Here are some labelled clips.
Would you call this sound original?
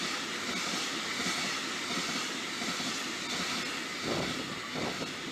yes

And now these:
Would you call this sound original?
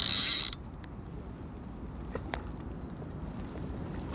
no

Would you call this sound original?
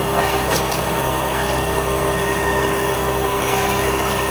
no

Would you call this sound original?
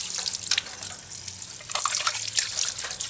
yes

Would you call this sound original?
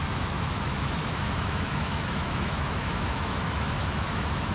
no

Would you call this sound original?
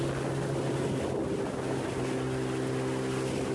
yes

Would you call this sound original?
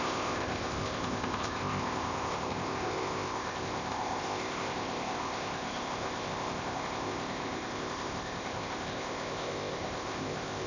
no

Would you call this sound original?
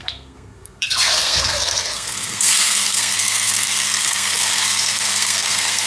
no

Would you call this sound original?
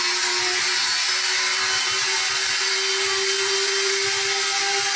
yes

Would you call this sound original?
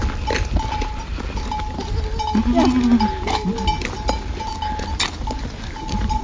yes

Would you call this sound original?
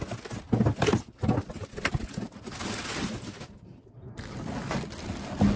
yes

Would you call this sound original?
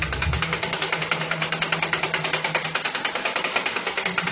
yes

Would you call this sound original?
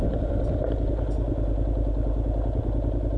yes